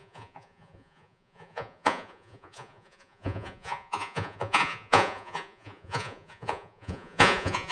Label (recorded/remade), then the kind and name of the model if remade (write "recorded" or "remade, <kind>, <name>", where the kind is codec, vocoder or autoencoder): remade, vocoder, Vocos